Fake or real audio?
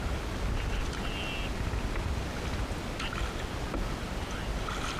real